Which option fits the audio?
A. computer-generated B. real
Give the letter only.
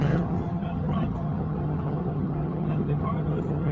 A